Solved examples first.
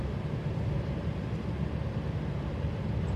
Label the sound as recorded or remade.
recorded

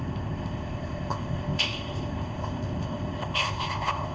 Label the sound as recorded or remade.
remade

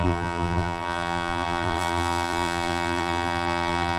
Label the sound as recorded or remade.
remade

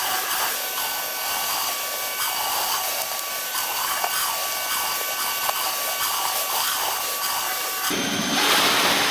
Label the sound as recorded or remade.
recorded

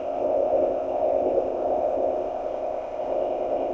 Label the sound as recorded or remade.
remade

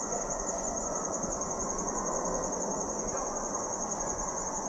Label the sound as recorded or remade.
remade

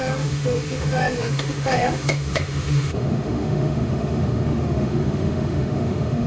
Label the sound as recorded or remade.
remade